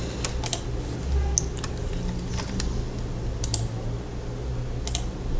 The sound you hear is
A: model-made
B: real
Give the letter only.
B